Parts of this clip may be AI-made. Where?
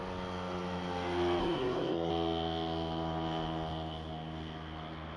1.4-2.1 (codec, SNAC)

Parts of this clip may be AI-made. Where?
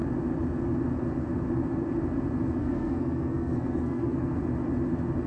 2.6-4.4 (codec, SNAC)